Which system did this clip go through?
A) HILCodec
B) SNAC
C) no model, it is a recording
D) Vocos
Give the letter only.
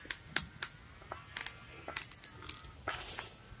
C